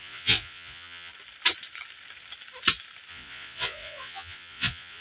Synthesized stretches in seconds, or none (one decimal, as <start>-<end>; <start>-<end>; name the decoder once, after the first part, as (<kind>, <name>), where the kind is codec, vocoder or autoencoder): 0.0-1.1 (vocoder, Vocos); 3.1-5.0

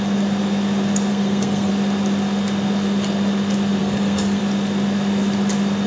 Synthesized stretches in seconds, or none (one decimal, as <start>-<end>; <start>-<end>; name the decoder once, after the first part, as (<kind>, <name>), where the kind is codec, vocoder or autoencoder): 1.1-1.7 (codec, SNAC); 3.8-4.4

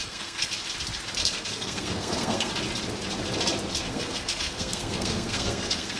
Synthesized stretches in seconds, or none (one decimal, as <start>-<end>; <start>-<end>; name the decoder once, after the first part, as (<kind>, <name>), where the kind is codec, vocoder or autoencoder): 0.0-0.5 (codec, SNAC); 1.2-2.5; 3.9-6.0

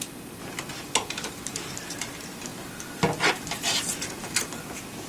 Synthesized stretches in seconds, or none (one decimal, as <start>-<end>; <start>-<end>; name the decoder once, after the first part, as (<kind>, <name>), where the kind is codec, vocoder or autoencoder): none

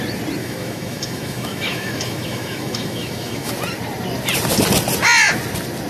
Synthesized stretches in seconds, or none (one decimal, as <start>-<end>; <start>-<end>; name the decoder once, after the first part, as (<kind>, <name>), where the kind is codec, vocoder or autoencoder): 0.4-3.5 (autoencoder, DAC-VAE)

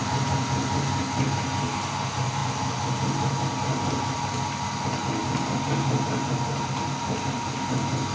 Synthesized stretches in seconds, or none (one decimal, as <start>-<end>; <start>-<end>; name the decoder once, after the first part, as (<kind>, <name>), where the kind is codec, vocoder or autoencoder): none

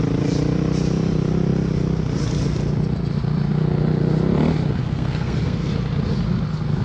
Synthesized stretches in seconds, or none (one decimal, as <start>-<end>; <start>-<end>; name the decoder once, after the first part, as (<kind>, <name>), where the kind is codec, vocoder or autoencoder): 4.8-5.7 (codec, SNAC)

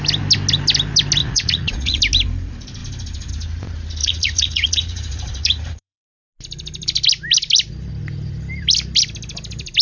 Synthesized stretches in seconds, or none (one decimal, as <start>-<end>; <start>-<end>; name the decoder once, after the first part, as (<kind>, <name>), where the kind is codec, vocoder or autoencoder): 1.2-2.0 (vocoder, Vocos); 4.0-6.2